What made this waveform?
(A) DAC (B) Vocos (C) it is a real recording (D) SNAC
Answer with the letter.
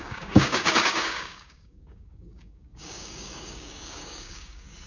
A